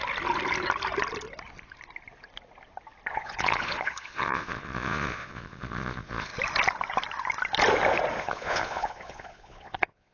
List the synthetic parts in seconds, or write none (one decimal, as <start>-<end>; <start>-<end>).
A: 3.1-6.3; 8.2-10.1